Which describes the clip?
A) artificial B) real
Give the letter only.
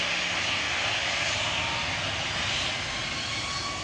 B